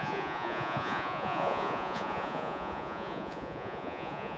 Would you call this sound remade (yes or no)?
yes